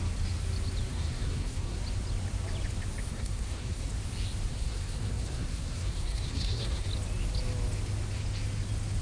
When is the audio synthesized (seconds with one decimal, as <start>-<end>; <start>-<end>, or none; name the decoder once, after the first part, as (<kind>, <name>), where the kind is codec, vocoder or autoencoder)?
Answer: 0.9-1.8 (codec, SNAC); 3.1-3.9; 4.5-6.9